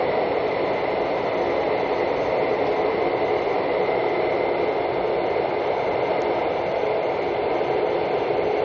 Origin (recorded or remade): recorded